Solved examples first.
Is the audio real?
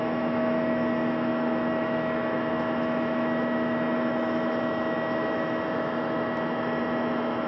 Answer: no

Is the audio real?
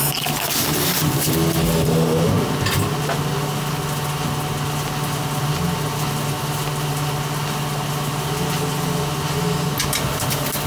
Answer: yes